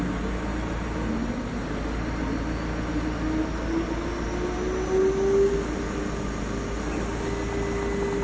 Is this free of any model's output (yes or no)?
yes